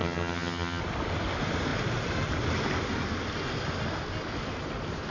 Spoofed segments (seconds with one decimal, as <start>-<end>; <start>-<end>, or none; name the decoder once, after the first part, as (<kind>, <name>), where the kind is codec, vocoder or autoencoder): 0.0-0.8 (vocoder, HiFi-GAN)